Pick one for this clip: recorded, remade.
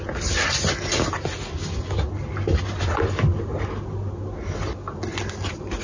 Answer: recorded